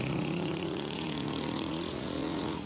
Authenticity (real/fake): fake